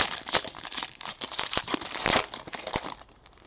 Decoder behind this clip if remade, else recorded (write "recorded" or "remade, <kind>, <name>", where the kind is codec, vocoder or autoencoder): remade, vocoder, BigVGAN v2